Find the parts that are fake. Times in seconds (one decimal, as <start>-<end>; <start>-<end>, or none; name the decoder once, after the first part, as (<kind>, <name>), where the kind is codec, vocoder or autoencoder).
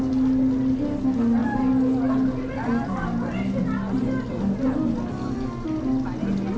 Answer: none